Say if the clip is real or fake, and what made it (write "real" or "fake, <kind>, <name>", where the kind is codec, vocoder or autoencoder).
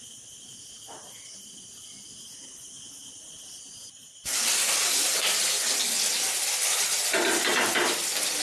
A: real